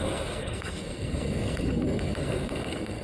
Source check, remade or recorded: remade